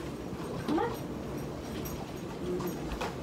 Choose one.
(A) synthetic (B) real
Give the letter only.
B